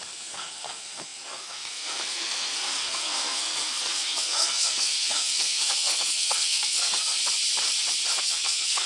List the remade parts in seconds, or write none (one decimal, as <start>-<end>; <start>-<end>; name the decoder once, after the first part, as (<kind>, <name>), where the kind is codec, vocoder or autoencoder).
0.0-7.2 (codec, SNAC); 8.2-8.9